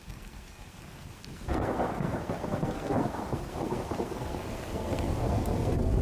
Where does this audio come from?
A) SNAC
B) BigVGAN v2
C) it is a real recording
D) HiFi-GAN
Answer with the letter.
A